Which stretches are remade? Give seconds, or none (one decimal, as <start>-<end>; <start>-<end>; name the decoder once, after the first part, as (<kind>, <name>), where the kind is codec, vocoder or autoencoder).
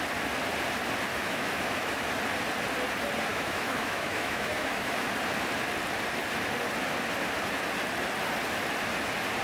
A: 1.1-2.1 (autoencoder, DAC-VAE); 3.3-5.1